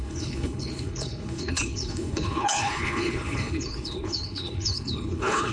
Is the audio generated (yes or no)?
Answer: yes